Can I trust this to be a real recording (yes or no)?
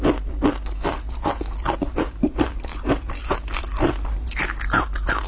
yes